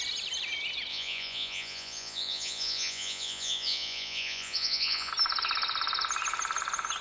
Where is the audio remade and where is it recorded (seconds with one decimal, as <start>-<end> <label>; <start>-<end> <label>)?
0.0-0.9 recorded; 0.9-5.1 remade; 5.1-7.0 recorded